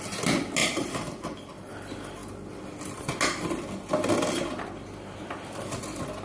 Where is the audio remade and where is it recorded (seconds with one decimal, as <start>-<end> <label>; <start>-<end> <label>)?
0.0-0.6 recorded; 0.6-1.7 remade; 1.7-6.2 recorded